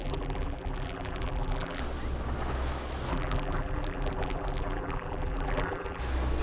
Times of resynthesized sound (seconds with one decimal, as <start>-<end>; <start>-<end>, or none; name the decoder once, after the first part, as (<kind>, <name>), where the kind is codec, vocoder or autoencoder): 0.0-1.8 (vocoder, BigVGAN v2); 3.1-6.0